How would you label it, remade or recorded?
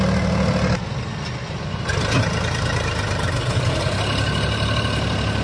recorded